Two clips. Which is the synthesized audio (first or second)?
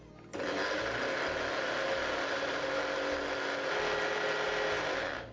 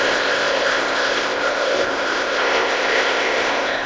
second